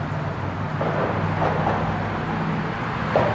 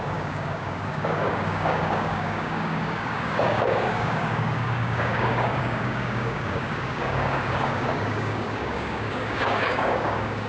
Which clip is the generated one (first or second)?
second